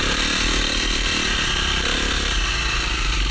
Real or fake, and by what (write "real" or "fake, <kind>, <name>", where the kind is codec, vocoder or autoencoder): real